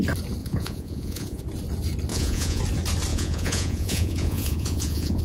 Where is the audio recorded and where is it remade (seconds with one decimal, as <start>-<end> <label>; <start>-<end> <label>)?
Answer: 0.0-0.4 recorded; 0.4-1.4 remade; 1.4-2.1 recorded; 2.1-2.6 remade; 2.6-3.1 recorded; 3.1-5.2 remade